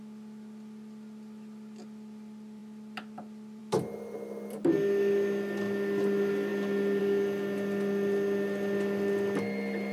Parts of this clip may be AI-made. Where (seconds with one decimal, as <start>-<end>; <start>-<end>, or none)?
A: none